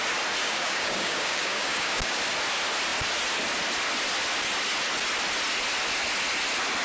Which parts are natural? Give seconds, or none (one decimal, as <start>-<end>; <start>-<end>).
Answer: 0.0-0.4; 2.2-6.8